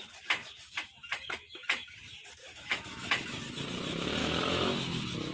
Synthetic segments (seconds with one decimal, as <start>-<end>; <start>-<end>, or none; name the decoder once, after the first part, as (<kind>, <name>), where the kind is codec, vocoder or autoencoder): 0.4-2.0 (autoencoder, DAC-VAE); 2.4-3.4; 4.2-5.3